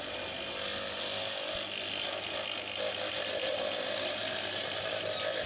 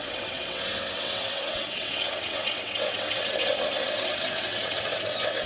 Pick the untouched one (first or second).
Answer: first